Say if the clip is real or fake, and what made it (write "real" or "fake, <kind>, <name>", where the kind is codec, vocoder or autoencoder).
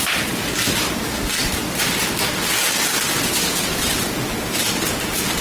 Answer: real